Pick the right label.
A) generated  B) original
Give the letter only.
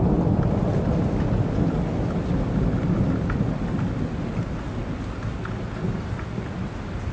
B